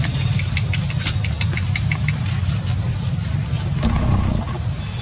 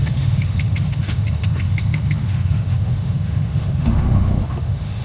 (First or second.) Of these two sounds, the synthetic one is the second